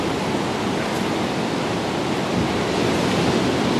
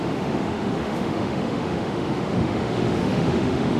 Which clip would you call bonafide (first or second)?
first